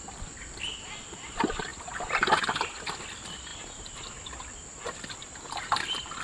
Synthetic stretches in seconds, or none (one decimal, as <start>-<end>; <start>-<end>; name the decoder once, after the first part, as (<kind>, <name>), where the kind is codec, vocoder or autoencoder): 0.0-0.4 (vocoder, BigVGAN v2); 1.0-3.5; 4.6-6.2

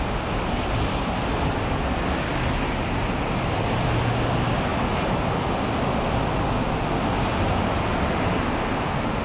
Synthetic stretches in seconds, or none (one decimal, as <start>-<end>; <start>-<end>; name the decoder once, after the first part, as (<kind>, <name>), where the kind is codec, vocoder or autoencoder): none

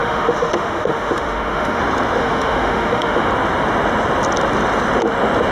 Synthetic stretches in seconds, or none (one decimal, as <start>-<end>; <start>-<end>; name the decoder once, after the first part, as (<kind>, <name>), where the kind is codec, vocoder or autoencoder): 0.0-1.8 (autoencoder, DAC-VAE); 2.2-3.3

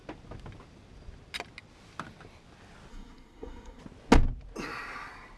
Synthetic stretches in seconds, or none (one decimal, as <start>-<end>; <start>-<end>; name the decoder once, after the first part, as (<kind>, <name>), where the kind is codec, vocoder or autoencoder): 2.9-3.8 (codec, SNAC)

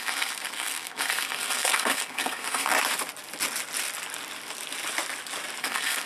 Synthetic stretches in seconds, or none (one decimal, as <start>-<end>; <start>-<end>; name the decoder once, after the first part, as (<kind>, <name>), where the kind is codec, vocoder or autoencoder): 0.0-2.7 (codec, SNAC); 5.6-6.1

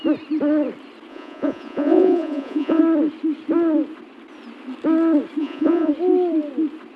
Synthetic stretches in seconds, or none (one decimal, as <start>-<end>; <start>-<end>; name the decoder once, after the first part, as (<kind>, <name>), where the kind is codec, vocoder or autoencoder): 1.1-2.8 (vocoder, Vocos); 5.4-5.9

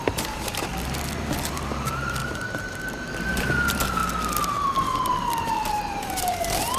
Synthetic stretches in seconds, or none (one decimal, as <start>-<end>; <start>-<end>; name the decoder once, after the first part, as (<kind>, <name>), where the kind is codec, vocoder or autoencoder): 0.0-0.7 (vocoder, BigVGAN v2); 1.5-4.0; 5.4-6.8

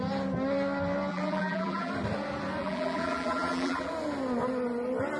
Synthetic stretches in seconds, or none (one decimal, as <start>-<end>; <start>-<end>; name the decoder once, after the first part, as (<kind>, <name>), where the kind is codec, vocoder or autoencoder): 1.1-1.9 (vocoder, BigVGAN v2); 2.6-3.9